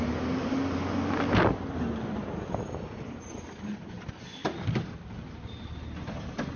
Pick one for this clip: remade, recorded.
recorded